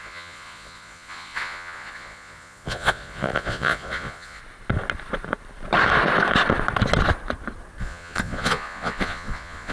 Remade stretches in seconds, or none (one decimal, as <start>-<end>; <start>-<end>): 0.0-4.4; 7.8-9.7